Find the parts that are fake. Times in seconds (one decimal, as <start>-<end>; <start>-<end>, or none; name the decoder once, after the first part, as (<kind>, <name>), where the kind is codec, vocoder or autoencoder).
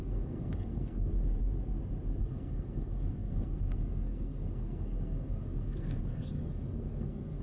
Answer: 0.0-1.1 (codec, SNAC); 2.2-7.4